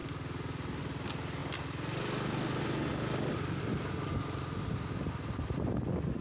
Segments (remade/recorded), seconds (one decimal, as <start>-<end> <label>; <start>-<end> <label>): 0.0-6.2 recorded